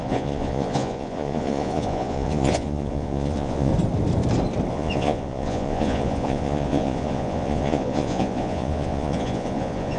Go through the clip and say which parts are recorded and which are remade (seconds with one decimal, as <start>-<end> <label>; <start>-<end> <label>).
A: 0.0-3.7 remade; 3.7-4.7 recorded; 4.7-10.0 remade